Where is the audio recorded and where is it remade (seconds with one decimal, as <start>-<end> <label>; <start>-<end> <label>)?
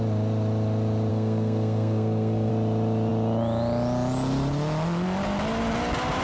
0.0-1.1 recorded; 1.1-2.5 remade; 2.5-6.2 recorded